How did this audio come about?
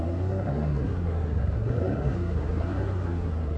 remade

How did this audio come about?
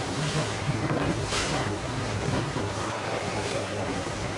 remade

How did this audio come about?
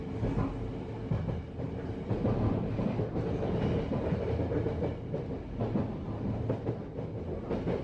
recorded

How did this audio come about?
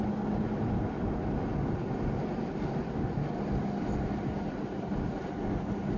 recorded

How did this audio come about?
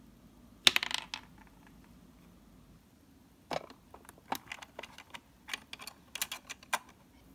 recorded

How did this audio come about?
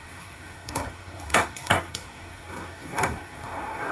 remade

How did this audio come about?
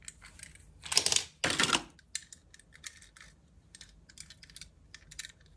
recorded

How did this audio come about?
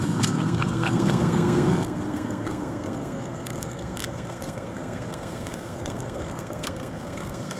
remade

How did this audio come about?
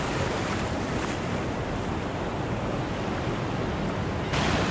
recorded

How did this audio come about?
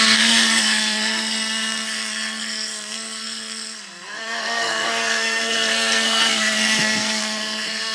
remade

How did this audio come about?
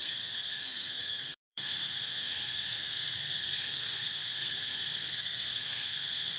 remade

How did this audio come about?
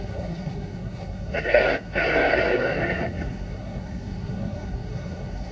remade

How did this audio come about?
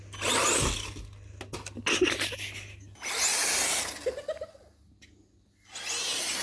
recorded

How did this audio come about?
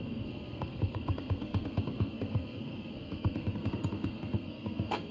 remade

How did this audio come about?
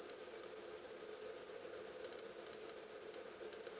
recorded